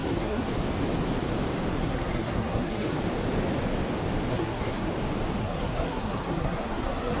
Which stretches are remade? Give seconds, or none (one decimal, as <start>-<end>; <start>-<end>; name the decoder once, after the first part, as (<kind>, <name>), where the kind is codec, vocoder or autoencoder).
0.0-0.5 (codec, SNAC); 1.8-3.0; 4.3-4.9; 5.4-7.2